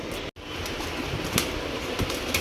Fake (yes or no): no